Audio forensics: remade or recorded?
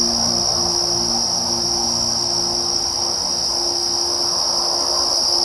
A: recorded